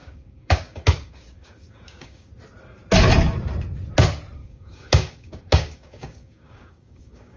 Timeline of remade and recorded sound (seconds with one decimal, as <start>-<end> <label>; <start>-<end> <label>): 0.0-2.3 remade; 2.3-4.4 recorded; 4.4-7.4 remade